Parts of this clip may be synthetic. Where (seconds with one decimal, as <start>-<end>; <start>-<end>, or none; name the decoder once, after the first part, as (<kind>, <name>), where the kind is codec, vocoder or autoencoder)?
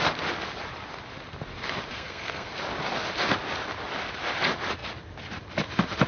1.9-2.5 (codec, SNAC)